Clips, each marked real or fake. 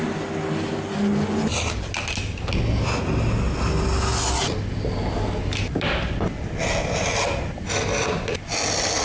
real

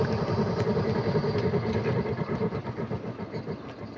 real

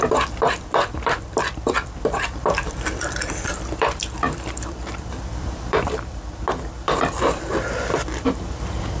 fake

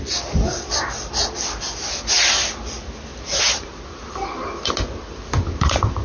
fake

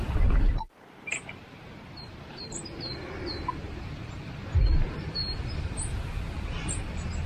fake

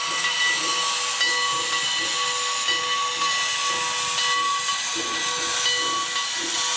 real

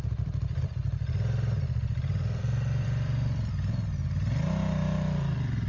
fake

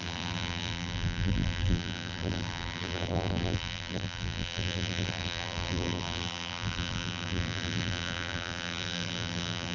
fake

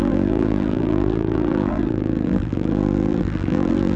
fake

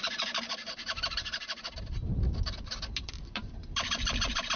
fake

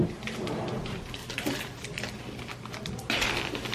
fake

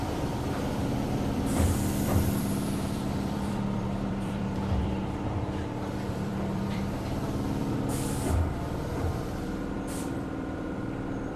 fake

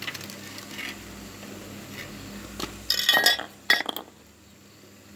real